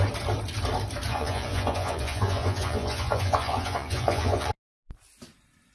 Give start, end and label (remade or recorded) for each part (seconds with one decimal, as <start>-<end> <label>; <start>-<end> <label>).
0.0-1.1 recorded; 1.1-4.5 remade; 4.5-5.7 recorded